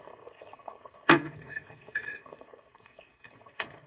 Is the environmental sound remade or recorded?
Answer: remade